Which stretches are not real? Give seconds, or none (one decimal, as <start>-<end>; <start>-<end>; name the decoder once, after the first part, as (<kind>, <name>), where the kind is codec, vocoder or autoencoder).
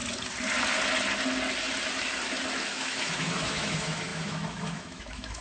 2.7-5.4 (autoencoder, DAC-VAE)